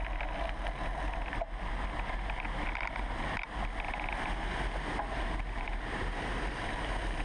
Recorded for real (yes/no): yes